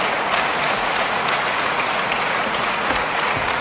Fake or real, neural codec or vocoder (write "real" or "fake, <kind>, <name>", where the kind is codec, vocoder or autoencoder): fake, vocoder, Vocos